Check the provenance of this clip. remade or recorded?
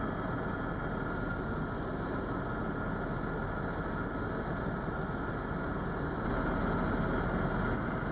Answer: recorded